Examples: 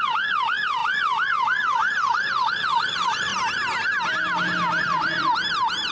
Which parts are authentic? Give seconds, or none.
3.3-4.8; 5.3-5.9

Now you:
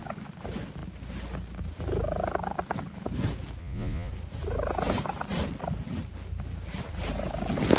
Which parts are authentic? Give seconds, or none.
0.0-3.6; 4.1-7.8

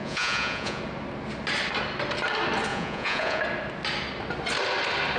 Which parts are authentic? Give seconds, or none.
0.8-2.7; 3.4-5.2

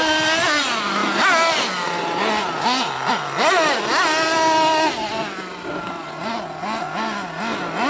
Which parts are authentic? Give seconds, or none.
0.0-7.9

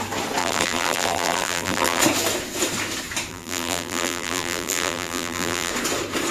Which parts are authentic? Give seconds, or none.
0.0-0.4; 2.0-3.3; 5.7-6.3

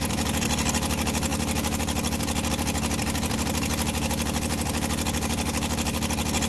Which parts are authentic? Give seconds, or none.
0.0-6.5

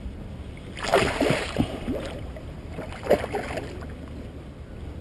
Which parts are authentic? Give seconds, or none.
0.0-0.9; 2.9-5.0